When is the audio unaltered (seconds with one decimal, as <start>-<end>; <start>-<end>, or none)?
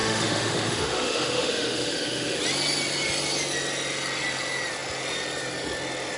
2.4-6.2